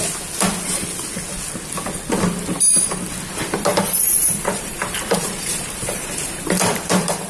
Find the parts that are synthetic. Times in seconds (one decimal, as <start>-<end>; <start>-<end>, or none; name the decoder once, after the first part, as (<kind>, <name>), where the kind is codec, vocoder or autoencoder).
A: 3.7-7.3 (vocoder, BigVGAN v2)